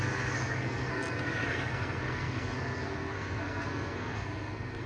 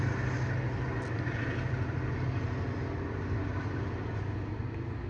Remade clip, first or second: first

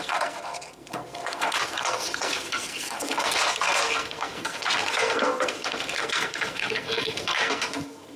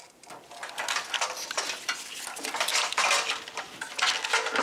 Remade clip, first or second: first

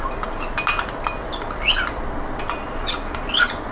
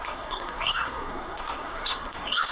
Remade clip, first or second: second